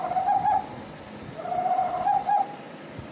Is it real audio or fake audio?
real